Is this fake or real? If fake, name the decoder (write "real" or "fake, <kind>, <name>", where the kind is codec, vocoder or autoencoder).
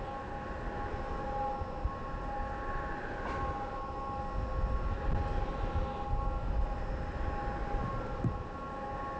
real